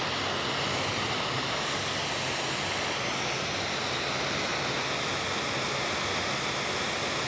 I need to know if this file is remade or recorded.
recorded